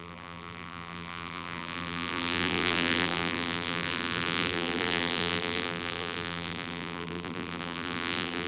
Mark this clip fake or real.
fake